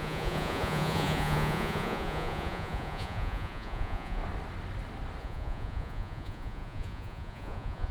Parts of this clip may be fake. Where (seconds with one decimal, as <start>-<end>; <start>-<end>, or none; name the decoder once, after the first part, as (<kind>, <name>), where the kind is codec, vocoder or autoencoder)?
0.0-4.2 (vocoder, Vocos); 5.2-7.9